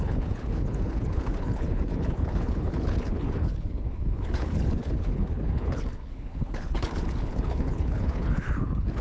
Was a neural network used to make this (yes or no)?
yes